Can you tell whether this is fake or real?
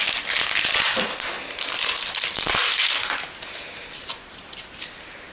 real